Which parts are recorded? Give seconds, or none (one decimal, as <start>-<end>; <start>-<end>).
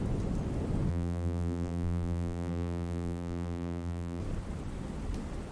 0.0-0.9; 4.2-5.5